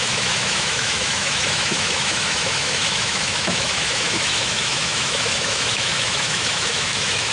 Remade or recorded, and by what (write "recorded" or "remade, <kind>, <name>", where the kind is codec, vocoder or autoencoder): remade, autoencoder, DAC-VAE